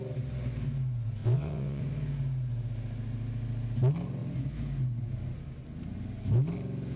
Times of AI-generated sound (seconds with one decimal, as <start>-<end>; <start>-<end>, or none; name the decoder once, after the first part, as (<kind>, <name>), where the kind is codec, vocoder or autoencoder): 1.2-1.8 (vocoder, WaveNeXt)